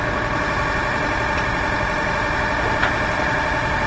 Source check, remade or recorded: recorded